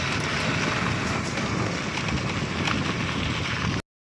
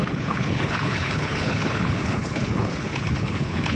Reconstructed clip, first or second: second